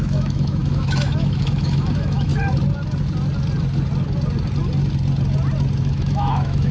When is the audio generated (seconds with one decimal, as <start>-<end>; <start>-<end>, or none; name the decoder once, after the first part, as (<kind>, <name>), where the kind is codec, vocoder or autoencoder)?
0.0-2.3 (autoencoder, DAC-VAE); 5.8-6.7